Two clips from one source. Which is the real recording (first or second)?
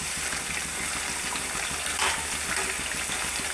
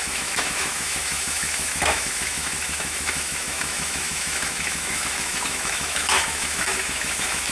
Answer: first